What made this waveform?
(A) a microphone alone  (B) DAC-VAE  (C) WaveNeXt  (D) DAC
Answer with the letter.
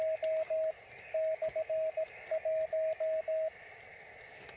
A